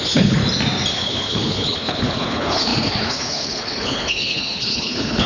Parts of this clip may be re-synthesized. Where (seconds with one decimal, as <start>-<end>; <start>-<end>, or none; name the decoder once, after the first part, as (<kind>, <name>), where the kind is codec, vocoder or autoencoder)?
0.0-0.4 (codec, HILCodec); 0.9-5.3